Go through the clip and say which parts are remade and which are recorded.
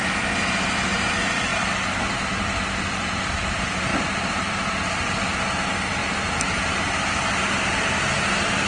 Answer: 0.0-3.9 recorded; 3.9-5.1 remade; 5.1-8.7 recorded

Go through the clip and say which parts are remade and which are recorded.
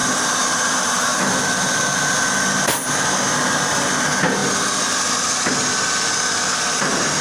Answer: 0.0-1.2 remade; 1.2-7.2 recorded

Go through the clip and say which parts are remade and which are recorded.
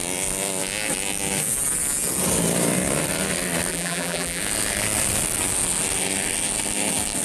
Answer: 0.0-3.7 recorded; 3.7-4.4 remade; 4.4-7.2 recorded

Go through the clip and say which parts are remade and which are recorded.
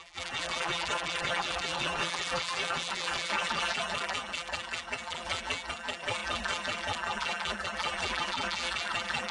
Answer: 0.0-9.3 remade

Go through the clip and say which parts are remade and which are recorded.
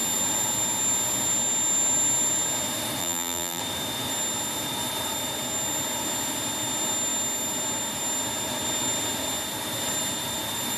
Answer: 0.0-3.0 recorded; 3.0-3.6 remade; 3.6-10.8 recorded